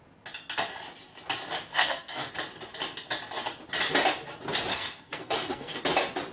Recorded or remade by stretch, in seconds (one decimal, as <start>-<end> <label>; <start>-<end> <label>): 0.0-1.7 recorded; 1.7-2.3 remade; 2.3-4.7 recorded; 4.7-5.8 remade; 5.8-6.3 recorded